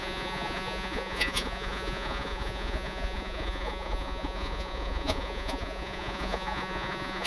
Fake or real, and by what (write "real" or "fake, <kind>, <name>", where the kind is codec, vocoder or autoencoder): fake, vocoder, Vocos